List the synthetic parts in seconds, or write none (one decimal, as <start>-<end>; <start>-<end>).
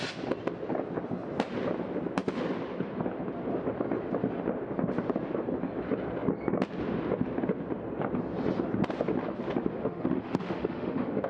9.8-11.3